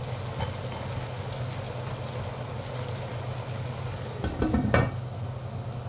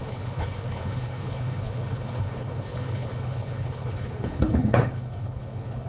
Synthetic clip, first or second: second